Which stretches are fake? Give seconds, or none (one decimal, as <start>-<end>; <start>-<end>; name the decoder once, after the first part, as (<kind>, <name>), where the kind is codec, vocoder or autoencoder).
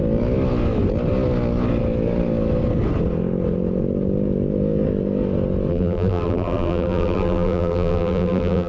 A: 5.7-8.7 (vocoder, BigVGAN v2)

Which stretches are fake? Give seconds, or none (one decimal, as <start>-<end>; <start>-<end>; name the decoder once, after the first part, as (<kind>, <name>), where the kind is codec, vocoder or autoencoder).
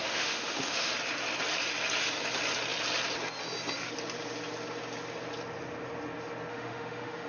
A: 0.0-0.9 (autoencoder, DAC-VAE); 6.5-7.3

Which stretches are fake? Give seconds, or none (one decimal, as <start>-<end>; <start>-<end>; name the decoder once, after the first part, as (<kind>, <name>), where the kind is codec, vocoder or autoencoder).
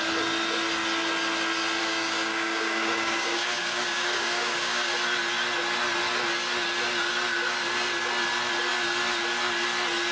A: 1.8-4.9 (codec, DAC)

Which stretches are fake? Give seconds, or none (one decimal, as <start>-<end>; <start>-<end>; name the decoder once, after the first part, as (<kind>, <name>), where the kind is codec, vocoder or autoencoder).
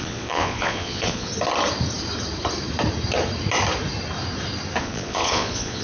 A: 0.0-1.3 (vocoder, Vocos); 4.8-5.8